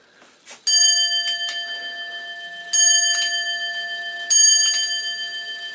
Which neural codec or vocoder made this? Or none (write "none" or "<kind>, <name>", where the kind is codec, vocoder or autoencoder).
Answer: none